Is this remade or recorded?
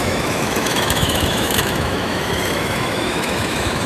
remade